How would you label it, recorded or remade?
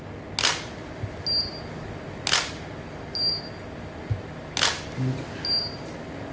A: recorded